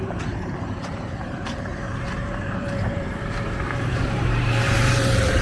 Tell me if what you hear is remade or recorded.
remade